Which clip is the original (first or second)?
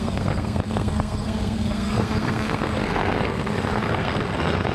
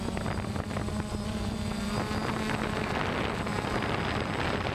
second